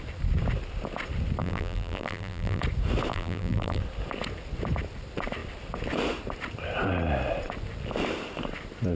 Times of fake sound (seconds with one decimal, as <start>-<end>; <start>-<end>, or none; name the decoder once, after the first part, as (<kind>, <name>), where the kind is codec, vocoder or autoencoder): 1.4-2.6 (vocoder, BigVGAN v2); 3.1-3.8

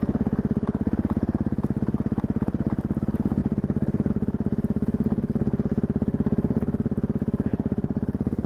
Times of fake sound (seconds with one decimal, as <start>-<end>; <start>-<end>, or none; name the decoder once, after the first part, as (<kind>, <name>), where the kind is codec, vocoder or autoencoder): 3.4-4.1 (vocoder, BigVGAN v2); 7.5-8.5